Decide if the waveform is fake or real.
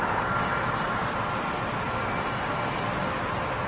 real